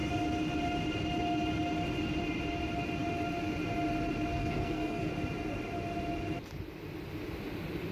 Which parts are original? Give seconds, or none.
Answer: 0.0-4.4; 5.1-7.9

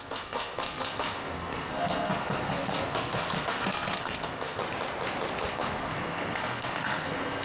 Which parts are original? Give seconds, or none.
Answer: 4.6-5.5